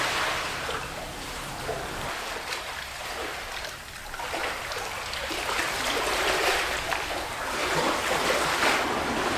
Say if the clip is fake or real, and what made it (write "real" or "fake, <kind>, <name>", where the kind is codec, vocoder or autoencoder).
fake, vocoder, BigVGAN v2